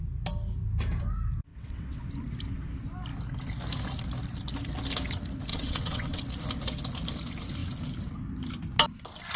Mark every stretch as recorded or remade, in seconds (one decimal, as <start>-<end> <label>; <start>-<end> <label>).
0.0-1.5 recorded; 1.5-2.0 remade; 2.0-5.5 recorded; 5.5-6.2 remade; 6.2-9.4 recorded

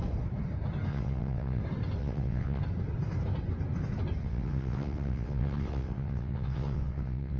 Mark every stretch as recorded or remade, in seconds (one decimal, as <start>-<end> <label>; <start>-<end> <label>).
0.0-0.9 recorded; 0.9-1.6 remade; 1.6-2.0 recorded; 2.0-2.6 remade; 2.6-4.2 recorded; 4.2-7.4 remade

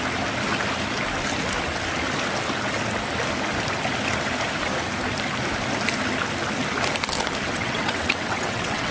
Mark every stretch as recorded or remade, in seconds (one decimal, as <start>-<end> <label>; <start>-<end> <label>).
0.0-7.5 recorded; 7.5-8.9 remade

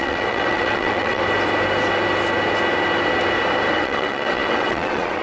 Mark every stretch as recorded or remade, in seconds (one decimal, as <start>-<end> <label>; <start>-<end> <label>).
0.0-1.2 remade; 1.2-3.7 recorded; 3.7-5.2 remade

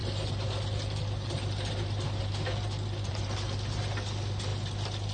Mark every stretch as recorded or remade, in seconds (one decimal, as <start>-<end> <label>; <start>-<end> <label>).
0.0-5.1 recorded

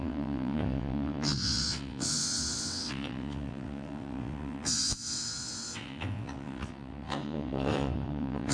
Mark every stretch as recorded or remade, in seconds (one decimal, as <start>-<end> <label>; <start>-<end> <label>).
0.0-8.5 remade